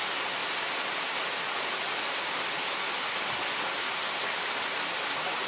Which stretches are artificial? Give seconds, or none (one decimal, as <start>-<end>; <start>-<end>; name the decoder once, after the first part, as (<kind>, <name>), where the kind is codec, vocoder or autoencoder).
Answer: none